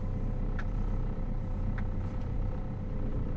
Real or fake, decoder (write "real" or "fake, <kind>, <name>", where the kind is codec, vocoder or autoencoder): fake, vocoder, BigVGAN v2